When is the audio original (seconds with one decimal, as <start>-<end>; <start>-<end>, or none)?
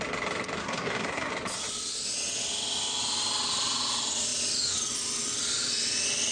0.0-0.6; 1.3-6.3